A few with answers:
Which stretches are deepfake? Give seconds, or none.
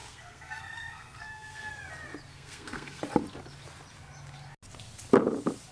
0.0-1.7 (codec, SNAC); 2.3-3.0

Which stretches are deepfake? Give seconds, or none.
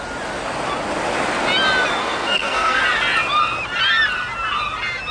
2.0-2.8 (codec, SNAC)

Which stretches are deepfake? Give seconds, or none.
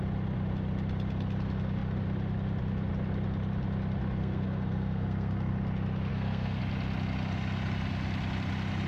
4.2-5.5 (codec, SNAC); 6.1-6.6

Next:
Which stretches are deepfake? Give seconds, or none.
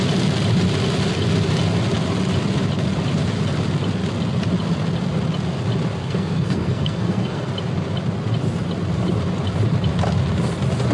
6.0-7.5 (codec, SNAC)